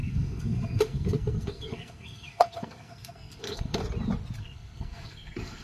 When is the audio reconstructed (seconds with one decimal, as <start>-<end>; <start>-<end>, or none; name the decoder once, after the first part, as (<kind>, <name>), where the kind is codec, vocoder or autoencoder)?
0.0-3.8 (codec, SNAC); 4.4-5.6